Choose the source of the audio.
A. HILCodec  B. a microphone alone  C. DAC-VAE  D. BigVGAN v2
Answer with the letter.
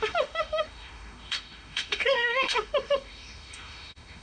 C